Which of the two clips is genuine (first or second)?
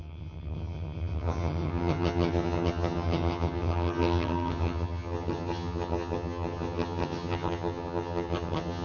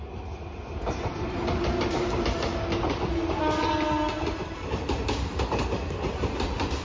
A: second